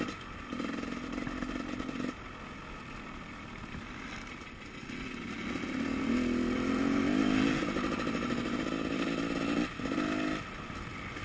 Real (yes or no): yes